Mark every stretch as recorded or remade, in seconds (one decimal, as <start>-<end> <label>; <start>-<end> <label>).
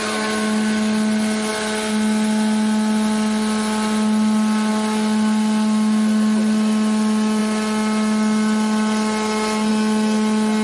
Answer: 0.0-10.6 recorded